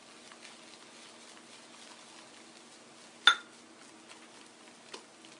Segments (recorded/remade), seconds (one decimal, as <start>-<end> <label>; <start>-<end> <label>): 0.0-5.4 recorded

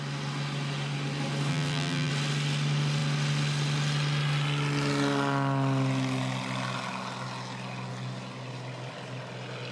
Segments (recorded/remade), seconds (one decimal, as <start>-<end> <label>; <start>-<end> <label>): 0.0-1.5 recorded; 1.5-2.1 remade; 2.1-9.7 recorded

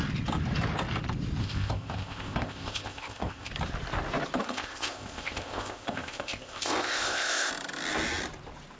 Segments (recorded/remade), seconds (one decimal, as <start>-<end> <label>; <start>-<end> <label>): 0.0-1.4 recorded; 1.4-3.5 remade; 3.5-4.4 recorded; 4.4-7.5 remade; 7.5-8.8 recorded

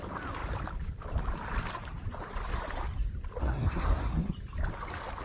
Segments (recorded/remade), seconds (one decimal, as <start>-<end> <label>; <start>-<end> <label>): 0.0-3.4 recorded; 3.4-4.3 remade; 4.3-5.2 recorded

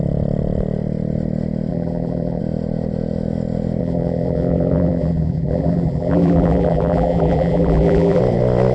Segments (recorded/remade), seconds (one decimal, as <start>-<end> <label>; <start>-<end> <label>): 0.0-1.7 recorded; 1.7-2.4 remade; 2.4-3.8 recorded; 3.8-8.2 remade; 8.2-8.7 recorded